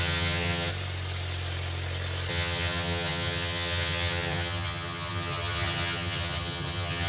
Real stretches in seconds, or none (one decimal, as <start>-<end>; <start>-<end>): 0.7-2.3